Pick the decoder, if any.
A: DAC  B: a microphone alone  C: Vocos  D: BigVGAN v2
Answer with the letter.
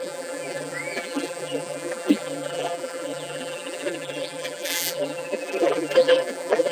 D